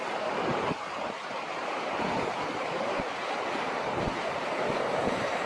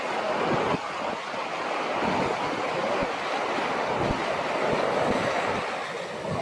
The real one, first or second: second